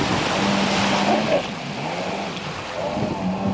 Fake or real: real